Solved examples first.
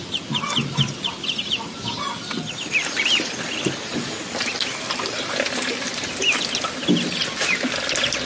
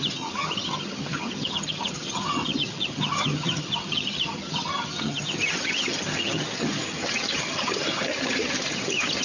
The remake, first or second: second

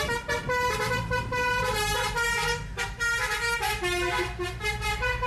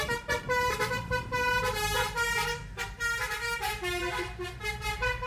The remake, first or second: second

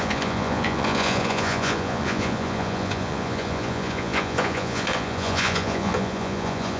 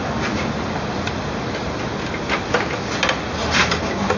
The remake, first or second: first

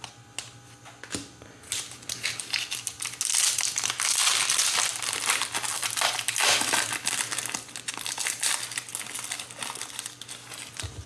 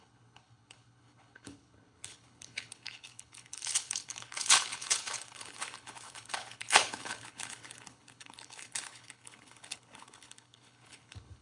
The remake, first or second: second